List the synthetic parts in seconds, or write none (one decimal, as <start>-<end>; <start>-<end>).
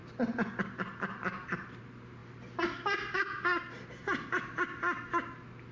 none